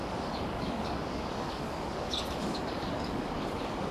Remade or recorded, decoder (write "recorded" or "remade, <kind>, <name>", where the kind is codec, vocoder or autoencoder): remade, codec, DAC